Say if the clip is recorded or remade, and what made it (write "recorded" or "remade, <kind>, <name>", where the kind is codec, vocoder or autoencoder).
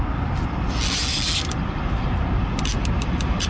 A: recorded